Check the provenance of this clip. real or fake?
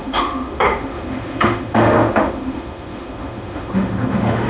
fake